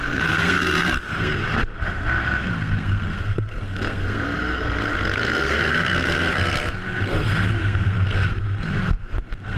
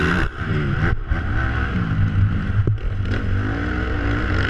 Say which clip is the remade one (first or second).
first